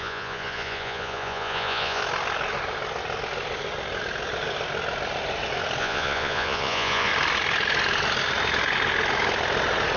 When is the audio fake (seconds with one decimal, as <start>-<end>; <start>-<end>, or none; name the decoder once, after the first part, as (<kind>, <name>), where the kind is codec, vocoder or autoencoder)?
0.0-2.0 (vocoder, Vocos); 5.8-7.1